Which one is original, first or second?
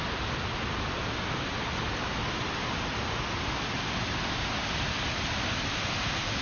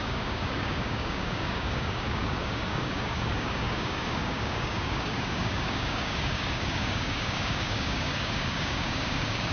first